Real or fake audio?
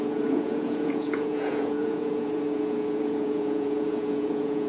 fake